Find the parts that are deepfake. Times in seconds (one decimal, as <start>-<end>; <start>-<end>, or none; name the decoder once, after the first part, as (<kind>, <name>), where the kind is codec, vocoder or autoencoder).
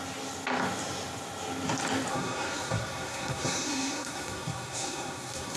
2.1-5.6 (codec, SNAC)